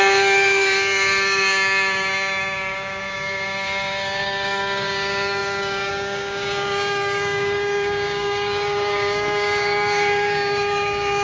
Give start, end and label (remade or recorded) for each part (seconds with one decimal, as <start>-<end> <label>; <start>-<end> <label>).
0.0-11.2 remade